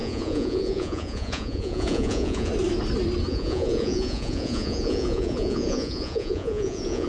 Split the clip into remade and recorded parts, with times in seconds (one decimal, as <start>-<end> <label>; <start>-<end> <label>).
0.0-2.5 remade; 2.5-3.3 recorded; 3.3-7.1 remade